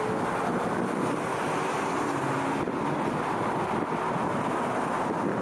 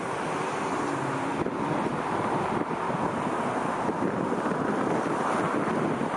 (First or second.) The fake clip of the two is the second